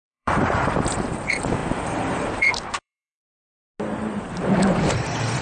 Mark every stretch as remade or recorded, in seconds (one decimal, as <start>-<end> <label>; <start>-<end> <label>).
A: 0.0-3.6 remade; 3.6-4.8 recorded; 4.8-5.4 remade